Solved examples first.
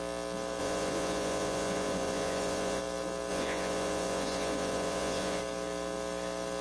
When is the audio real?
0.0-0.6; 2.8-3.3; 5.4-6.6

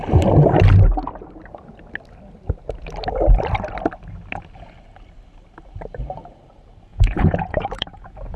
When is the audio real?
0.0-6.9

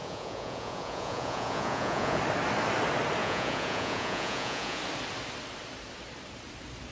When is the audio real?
2.2-3.2; 4.8-6.9

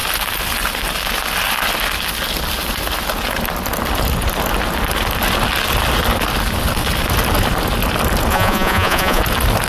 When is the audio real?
0.0-8.3; 9.2-9.7

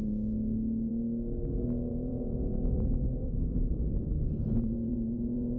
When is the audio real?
0.0-1.9